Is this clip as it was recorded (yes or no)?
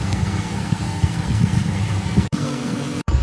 no